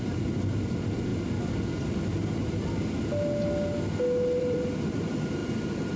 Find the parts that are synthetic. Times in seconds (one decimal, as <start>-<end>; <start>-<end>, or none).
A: 0.0-1.1; 4.4-5.4